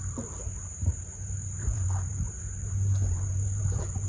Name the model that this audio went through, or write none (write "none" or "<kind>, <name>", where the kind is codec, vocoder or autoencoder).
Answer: vocoder, BigVGAN v2